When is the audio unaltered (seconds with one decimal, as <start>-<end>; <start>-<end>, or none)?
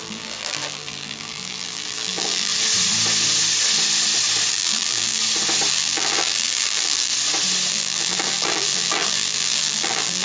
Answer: 2.5-4.5; 5.2-5.7; 7.1-7.7